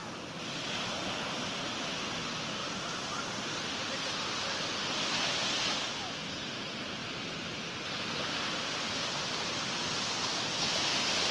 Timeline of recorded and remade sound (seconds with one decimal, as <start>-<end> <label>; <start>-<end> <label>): 0.0-2.6 recorded; 2.6-3.5 remade; 3.5-7.0 recorded; 7.0-9.1 remade; 9.1-11.3 recorded